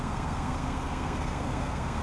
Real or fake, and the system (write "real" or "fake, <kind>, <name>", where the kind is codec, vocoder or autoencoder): fake, codec, SNAC